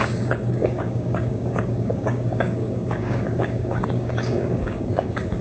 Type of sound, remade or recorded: remade